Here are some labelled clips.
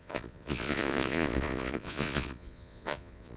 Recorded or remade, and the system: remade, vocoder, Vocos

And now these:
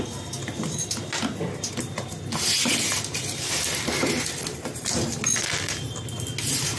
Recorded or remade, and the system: recorded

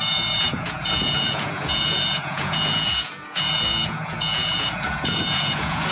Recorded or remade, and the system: remade, vocoder, Vocos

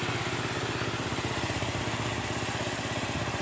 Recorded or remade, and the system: recorded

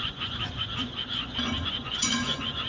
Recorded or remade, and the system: remade, vocoder, Vocos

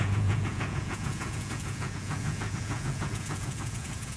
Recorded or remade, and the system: remade, vocoder, Vocos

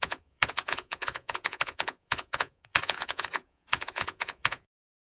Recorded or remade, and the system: remade, vocoder, Vocos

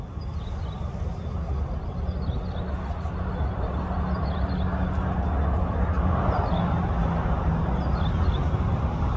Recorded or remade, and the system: recorded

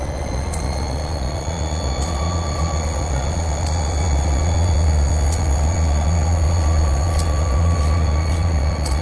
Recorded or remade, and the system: remade, vocoder, Vocos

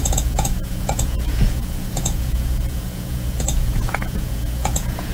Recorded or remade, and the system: remade, vocoder, Vocos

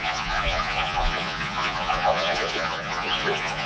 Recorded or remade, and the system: remade, vocoder, Vocos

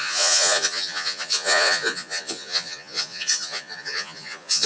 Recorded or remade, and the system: remade, vocoder, Vocos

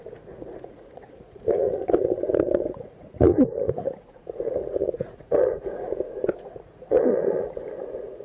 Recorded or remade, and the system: remade, vocoder, Vocos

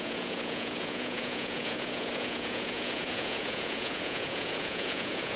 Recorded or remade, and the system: remade, vocoder, Vocos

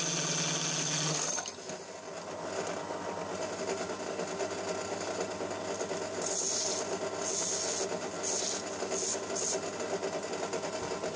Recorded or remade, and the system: recorded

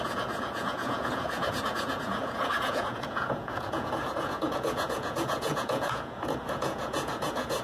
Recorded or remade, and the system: remade, vocoder, Vocos